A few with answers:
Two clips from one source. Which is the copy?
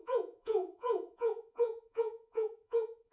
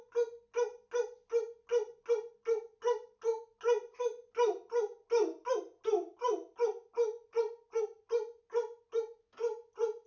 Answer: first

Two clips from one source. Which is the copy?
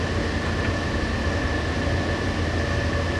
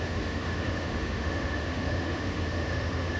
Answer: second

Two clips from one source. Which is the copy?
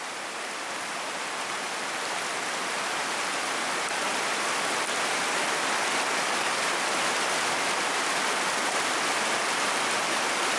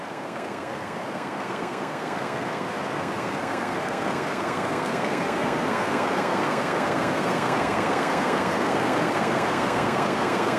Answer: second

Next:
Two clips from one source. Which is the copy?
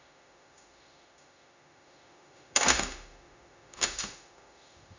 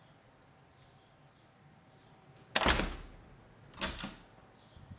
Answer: first